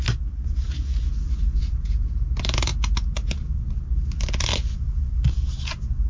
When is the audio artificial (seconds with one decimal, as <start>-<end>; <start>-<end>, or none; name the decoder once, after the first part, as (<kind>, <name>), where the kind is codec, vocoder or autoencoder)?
none